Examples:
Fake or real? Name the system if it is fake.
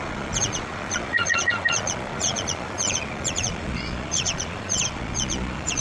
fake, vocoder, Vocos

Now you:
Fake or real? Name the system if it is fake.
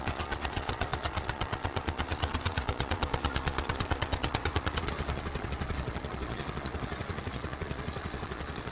fake, vocoder, Vocos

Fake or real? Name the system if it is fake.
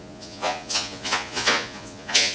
fake, vocoder, Vocos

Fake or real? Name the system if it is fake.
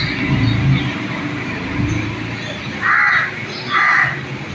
real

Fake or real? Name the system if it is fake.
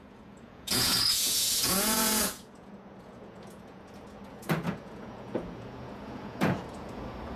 fake, vocoder, Vocos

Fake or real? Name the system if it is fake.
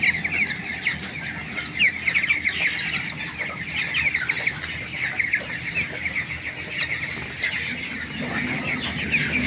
real